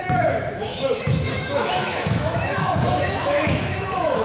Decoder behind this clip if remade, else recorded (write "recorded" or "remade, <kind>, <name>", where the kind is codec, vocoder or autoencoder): remade, autoencoder, DAC-VAE